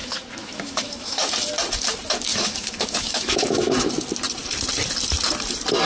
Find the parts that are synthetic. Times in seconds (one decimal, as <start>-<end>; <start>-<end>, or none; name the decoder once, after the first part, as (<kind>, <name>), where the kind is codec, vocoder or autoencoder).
0.0-1.3 (autoencoder, DAC-VAE); 2.3-3.9